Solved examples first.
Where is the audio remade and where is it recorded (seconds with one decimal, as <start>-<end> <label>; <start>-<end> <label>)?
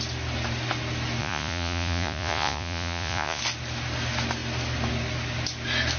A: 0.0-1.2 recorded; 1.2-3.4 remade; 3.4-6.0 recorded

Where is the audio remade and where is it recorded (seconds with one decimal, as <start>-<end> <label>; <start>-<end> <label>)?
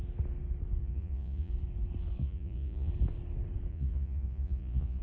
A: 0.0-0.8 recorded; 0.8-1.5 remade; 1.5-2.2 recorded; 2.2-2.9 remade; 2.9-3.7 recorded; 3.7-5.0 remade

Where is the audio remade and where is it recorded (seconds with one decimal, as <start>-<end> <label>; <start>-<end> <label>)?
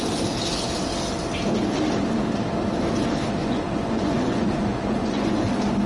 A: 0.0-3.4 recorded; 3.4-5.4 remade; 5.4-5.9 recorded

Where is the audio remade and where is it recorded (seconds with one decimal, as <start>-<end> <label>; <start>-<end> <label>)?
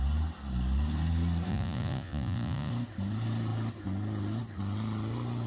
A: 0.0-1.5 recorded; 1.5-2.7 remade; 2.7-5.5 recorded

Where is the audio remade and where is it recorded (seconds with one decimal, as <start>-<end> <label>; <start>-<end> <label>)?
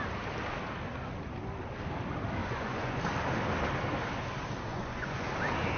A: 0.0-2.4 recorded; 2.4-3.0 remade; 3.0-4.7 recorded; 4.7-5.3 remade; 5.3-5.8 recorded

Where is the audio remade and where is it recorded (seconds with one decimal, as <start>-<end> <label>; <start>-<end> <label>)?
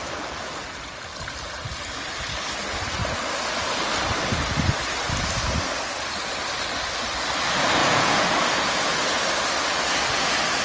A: 0.0-7.8 recorded; 7.8-8.8 remade; 8.8-10.6 recorded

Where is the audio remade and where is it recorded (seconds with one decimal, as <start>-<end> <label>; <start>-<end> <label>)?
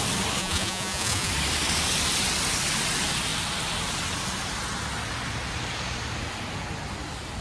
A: 0.0-0.4 recorded; 0.4-1.3 remade; 1.3-7.4 recorded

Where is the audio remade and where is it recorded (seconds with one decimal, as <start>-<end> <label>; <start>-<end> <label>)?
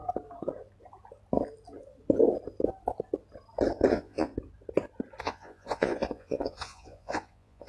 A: 0.0-3.9 recorded; 3.9-4.3 remade; 4.3-5.2 recorded; 5.2-7.7 remade